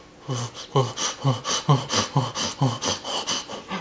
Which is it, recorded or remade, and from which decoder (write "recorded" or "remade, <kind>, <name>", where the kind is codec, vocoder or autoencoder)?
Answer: recorded